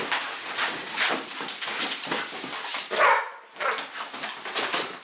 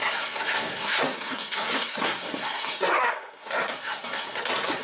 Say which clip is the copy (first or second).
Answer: second